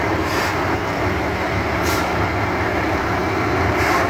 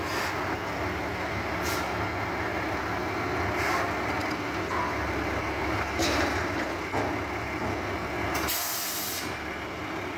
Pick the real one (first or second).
second